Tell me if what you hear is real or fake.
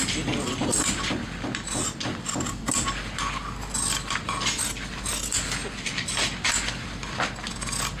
real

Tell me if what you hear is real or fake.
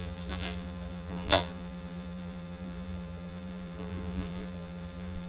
fake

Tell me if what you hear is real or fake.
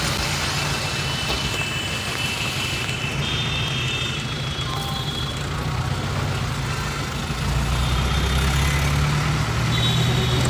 real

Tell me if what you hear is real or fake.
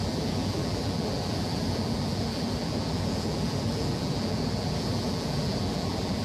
fake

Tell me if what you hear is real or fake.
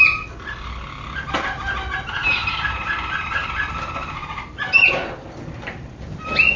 real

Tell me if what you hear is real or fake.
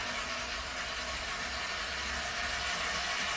real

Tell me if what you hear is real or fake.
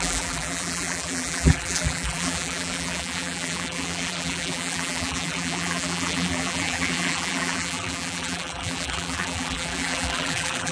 fake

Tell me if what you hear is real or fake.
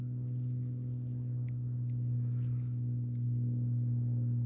real